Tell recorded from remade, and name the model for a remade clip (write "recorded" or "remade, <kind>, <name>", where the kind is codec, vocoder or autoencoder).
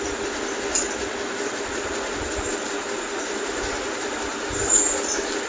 recorded